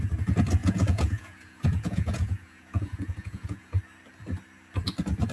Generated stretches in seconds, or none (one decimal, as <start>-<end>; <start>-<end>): 0.6-3.8